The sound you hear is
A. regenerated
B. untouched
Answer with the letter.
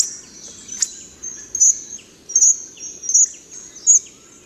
B